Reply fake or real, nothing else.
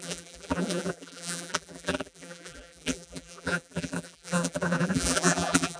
fake